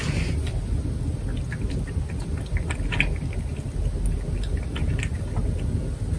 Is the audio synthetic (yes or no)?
no